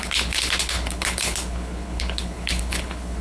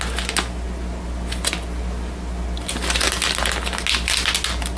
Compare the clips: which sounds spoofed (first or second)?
first